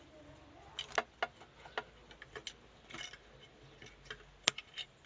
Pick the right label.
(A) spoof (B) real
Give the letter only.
B